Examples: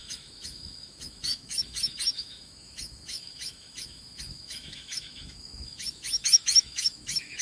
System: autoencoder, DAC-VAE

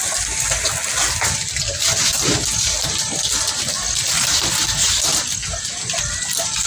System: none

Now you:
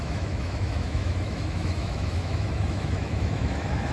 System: autoencoder, DAC-VAE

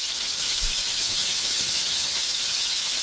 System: autoencoder, DAC-VAE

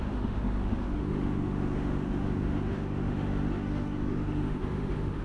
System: autoencoder, DAC-VAE